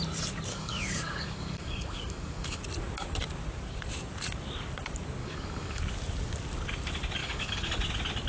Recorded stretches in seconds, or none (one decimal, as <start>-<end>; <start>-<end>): 0.0-0.5; 2.6-5.2; 5.8-7.2; 7.7-8.3